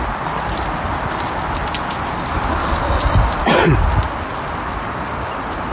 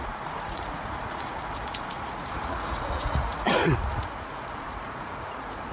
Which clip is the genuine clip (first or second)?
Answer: first